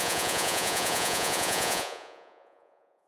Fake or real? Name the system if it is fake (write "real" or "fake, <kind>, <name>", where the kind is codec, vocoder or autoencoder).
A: fake, vocoder, Vocos